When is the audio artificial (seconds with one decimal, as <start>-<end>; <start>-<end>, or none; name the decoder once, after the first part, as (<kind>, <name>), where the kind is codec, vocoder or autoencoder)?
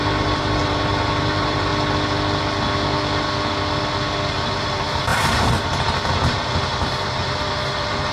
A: 0.0-1.7 (vocoder, BigVGAN v2); 4.3-8.1